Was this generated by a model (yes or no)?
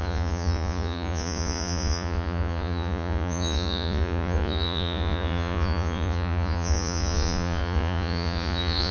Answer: yes